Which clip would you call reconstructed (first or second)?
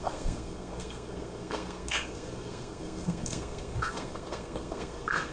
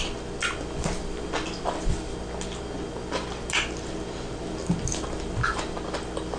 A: first